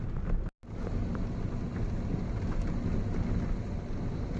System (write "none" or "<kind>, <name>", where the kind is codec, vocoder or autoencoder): none